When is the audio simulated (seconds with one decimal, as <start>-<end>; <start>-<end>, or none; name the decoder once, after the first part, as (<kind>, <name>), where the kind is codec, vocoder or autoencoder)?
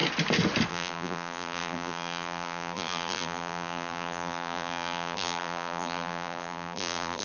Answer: 0.7-7.2 (vocoder, BigVGAN v2)